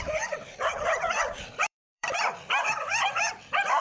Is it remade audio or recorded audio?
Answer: remade